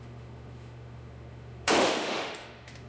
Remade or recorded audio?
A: remade